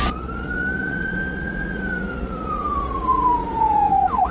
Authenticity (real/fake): fake